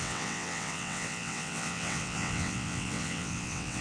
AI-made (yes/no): yes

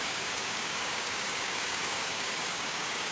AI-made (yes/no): yes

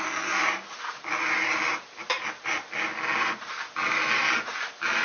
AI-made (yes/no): no